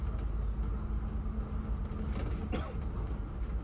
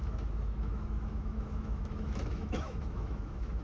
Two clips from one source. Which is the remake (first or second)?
second